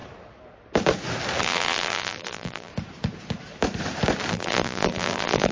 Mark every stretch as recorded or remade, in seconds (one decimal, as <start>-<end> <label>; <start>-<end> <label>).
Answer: 0.0-1.4 recorded; 1.4-2.7 remade; 2.7-4.3 recorded; 4.3-5.5 remade